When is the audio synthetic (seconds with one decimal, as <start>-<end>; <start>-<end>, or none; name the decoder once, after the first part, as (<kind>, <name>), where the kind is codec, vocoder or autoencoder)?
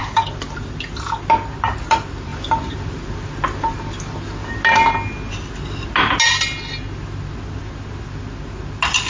none